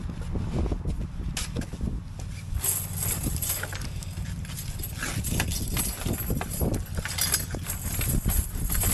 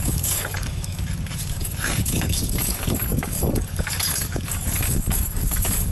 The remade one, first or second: second